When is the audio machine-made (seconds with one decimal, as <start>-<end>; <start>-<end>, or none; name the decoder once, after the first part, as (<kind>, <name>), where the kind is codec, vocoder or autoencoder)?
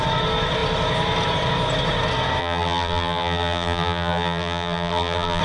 2.4-5.4 (vocoder, BigVGAN v2)